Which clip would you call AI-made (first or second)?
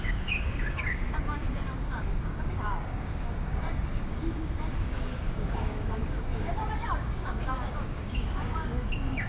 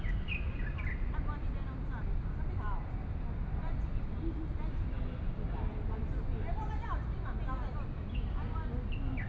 first